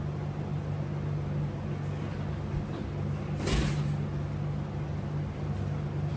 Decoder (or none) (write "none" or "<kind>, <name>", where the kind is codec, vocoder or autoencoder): none